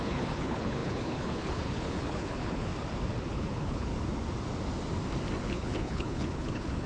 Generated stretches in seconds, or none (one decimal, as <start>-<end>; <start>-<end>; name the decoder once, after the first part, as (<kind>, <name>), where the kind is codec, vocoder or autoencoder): 0.0-2.7 (codec, HILCodec); 3.3-3.9; 5.4-6.9